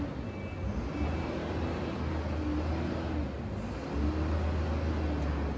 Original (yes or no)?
yes